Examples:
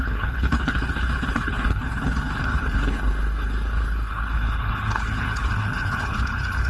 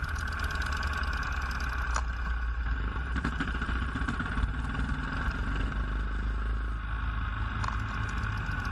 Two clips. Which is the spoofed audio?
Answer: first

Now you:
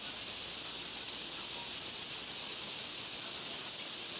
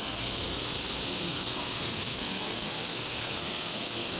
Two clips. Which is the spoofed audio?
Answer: second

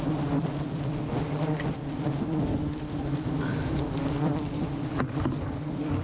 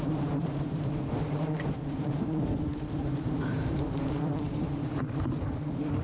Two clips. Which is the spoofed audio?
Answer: second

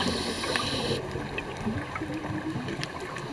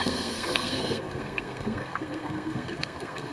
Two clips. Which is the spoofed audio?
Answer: second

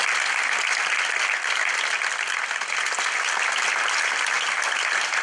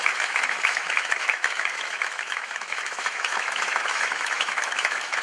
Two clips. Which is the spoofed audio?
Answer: second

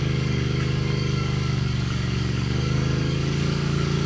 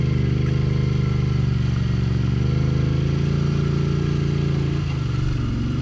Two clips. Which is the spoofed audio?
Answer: first